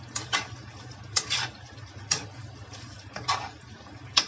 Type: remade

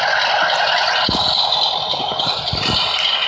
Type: recorded